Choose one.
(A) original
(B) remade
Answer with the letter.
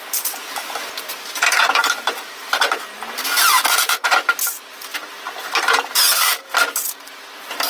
A